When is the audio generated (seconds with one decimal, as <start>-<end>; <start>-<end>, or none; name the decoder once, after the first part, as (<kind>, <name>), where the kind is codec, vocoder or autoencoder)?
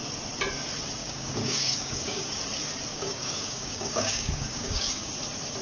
1.0-2.4 (codec, DAC); 2.9-5.1